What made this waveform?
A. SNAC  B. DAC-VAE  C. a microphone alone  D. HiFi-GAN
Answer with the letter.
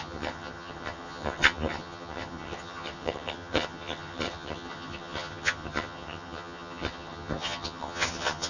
D